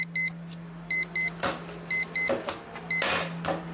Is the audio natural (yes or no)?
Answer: yes